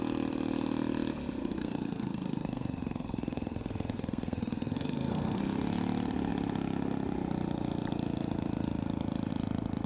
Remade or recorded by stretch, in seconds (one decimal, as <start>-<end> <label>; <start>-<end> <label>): 0.0-1.4 recorded; 1.4-5.4 remade; 5.4-9.9 recorded